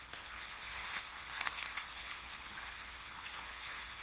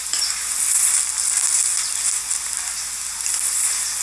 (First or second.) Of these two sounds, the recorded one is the second